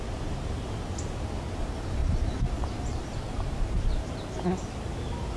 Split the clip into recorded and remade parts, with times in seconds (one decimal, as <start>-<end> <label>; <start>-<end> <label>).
0.0-2.0 recorded; 2.0-5.4 remade